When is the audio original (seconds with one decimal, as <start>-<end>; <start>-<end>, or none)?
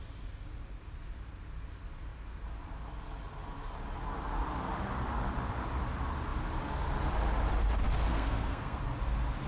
0.0-8.1; 8.8-9.5